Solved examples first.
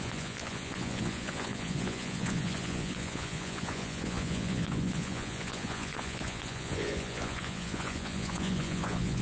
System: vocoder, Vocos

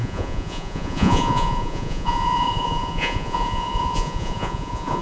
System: vocoder, Vocos